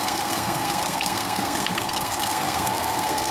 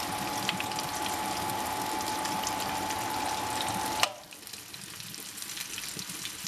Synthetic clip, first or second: first